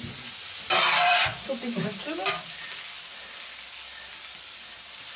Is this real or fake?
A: real